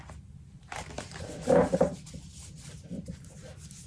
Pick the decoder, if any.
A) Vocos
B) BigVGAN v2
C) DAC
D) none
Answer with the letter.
B